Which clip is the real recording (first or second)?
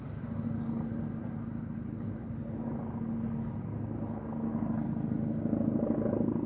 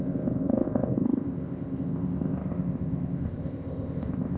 first